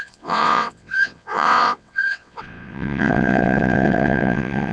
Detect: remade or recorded remade